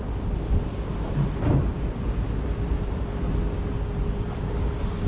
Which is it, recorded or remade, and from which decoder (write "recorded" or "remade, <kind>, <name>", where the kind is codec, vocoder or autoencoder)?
recorded